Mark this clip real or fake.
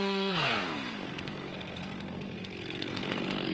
fake